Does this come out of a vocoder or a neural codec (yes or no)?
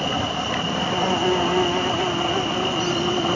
no